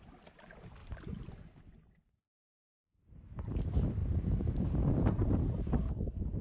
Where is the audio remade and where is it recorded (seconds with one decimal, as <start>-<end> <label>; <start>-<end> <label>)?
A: 0.0-6.4 recorded